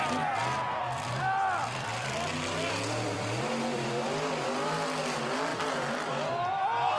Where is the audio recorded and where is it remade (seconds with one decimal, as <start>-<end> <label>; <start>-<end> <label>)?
0.0-0.8 recorded; 0.8-4.7 remade; 4.7-5.5 recorded; 5.5-6.1 remade; 6.1-7.0 recorded